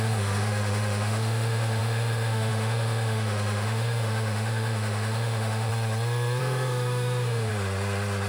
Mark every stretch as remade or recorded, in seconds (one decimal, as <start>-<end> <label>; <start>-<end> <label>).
0.0-5.7 remade; 5.7-6.4 recorded; 6.4-7.5 remade; 7.5-8.3 recorded